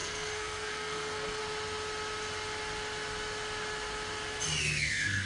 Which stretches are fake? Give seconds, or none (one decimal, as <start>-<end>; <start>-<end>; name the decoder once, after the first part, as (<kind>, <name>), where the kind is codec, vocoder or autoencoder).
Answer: 0.0-1.4 (codec, SNAC); 4.6-5.3